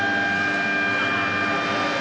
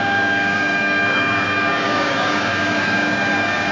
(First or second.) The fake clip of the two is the second